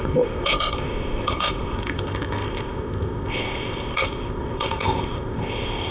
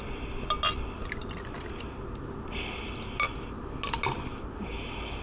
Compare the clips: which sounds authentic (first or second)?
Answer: second